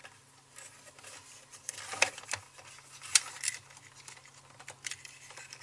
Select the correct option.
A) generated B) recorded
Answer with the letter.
B